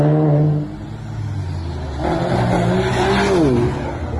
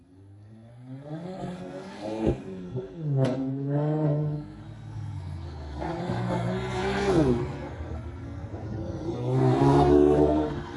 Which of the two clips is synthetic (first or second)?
second